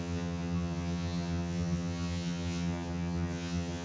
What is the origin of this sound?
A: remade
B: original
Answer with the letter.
A